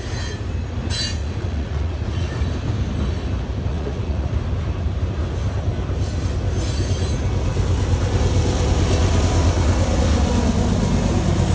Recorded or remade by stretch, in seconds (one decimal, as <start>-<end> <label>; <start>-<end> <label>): 0.0-1.2 recorded; 1.2-2.3 remade; 2.3-3.7 recorded; 3.7-4.3 remade; 4.3-11.5 recorded